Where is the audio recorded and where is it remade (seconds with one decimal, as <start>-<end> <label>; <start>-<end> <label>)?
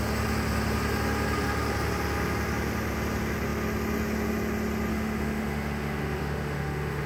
0.0-4.9 recorded; 4.9-7.1 remade